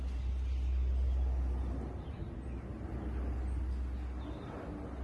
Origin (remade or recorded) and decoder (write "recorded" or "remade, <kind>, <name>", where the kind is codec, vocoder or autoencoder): recorded